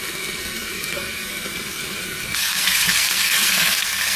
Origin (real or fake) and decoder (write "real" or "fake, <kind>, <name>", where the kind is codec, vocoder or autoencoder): fake, codec, SNAC